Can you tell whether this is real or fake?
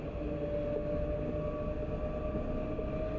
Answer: real